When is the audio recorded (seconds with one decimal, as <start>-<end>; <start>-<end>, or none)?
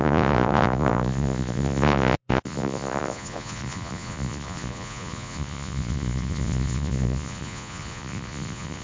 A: none